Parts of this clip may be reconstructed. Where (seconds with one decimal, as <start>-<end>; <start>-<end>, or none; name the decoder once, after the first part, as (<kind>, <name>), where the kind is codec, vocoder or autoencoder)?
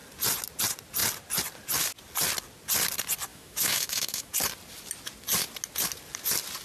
3.3-4.3 (autoencoder, DAC-VAE)